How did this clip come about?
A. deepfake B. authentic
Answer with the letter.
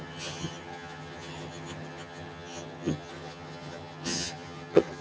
A